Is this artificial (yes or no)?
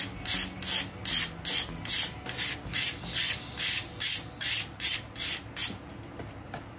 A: no